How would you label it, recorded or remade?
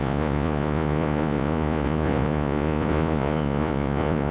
remade